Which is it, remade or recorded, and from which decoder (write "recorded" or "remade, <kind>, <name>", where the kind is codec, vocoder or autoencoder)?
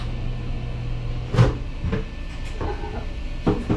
recorded